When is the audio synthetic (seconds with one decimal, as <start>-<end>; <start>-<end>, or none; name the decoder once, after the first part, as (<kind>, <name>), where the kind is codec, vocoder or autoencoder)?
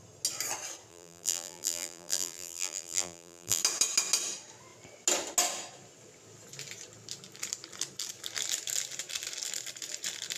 0.9-3.6 (vocoder, BigVGAN v2)